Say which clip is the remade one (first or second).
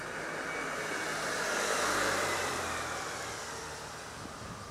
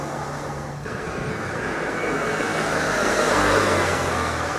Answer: second